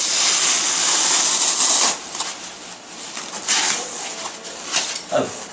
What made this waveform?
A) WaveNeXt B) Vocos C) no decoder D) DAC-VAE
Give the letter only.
C